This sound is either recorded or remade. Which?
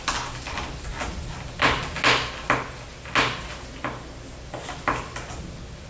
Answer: recorded